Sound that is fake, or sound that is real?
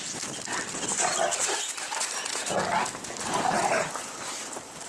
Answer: real